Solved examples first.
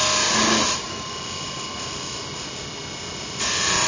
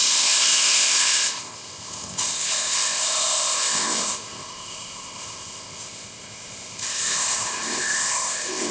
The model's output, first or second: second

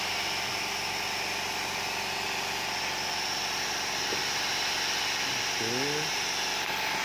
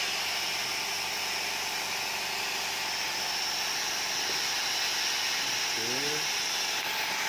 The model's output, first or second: first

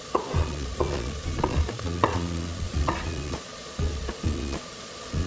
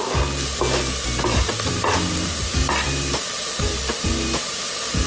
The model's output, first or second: first